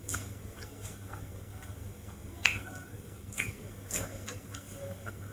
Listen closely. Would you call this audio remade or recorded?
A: remade